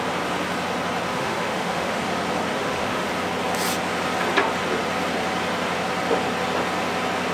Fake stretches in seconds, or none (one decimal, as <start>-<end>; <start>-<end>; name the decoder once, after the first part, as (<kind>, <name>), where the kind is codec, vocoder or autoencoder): 1.1-2.0 (autoencoder, DAC-VAE); 2.5-3.1